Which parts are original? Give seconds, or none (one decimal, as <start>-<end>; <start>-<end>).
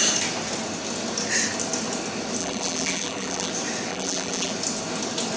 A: 0.0-2.4; 3.5-3.9; 4.5-5.4